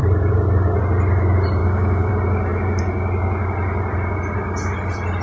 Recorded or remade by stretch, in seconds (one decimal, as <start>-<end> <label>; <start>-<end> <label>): 0.0-1.6 recorded; 1.6-2.1 remade; 2.1-5.2 recorded